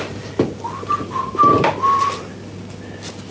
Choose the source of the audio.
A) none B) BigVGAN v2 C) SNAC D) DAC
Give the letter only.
A